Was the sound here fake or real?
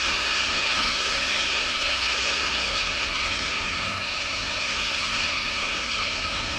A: fake